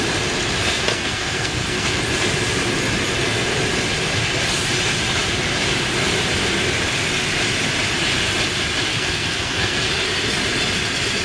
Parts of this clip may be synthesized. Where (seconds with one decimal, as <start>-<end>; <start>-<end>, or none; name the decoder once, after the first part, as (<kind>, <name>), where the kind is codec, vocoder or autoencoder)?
0.6-2.0 (codec, SNAC); 8.9-9.9